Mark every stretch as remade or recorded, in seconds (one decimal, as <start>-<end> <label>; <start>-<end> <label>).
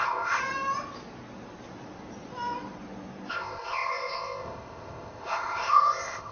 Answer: 0.0-0.4 remade; 0.4-3.3 recorded; 3.3-6.3 remade